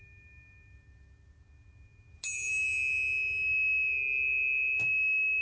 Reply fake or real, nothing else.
real